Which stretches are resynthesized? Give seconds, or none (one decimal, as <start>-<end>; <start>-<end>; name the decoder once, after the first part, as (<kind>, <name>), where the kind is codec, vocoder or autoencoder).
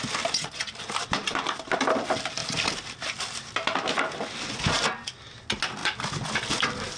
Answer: 1.2-1.8 (vocoder, BigVGAN v2); 5.8-6.3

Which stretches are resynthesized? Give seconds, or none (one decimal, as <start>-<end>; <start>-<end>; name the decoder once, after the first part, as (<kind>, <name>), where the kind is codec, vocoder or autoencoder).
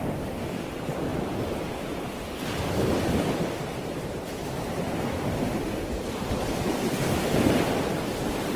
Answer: 1.1-2.8 (vocoder, BigVGAN v2); 3.7-4.8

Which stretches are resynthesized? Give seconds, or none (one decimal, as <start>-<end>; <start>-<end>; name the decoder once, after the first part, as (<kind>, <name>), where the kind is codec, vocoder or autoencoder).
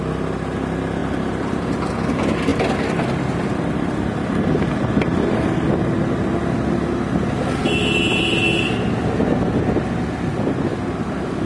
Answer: 1.0-1.9 (vocoder, BigVGAN v2); 2.5-5.7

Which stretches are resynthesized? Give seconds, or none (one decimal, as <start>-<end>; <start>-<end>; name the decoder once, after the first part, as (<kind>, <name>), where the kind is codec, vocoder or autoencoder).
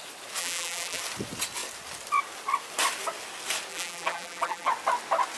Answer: 0.4-1.0 (vocoder, BigVGAN v2); 3.7-4.7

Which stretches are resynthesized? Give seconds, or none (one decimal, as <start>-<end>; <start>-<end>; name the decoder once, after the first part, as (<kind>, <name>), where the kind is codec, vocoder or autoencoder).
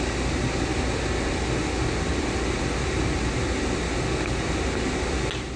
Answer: none